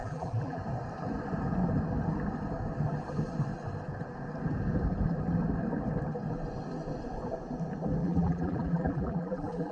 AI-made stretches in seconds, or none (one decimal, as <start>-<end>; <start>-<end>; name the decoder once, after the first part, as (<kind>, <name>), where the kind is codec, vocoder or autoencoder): 0.0-0.6 (vocoder, BigVGAN v2); 8.0-9.7